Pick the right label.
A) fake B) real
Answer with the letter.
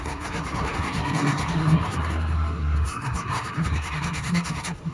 A